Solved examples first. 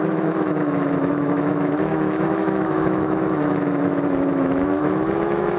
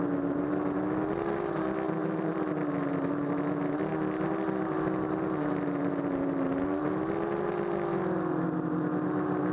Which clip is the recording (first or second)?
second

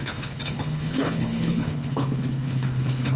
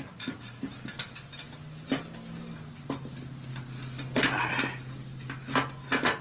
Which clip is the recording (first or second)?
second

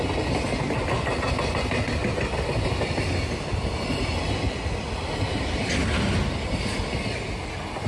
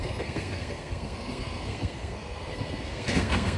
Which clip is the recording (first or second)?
first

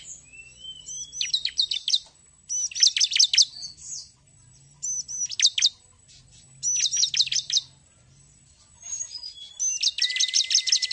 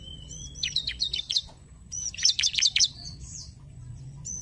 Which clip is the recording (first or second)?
first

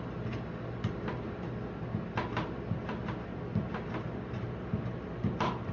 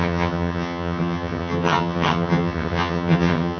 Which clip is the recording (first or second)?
first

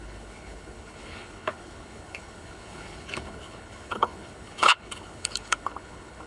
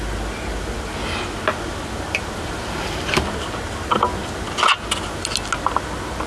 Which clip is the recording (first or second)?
second